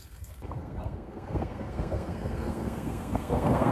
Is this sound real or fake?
fake